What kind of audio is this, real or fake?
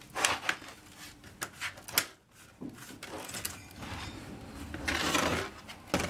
real